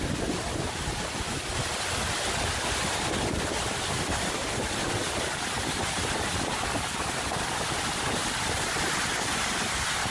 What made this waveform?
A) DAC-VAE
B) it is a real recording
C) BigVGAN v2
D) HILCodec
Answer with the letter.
B